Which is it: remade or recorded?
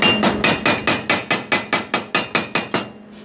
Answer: recorded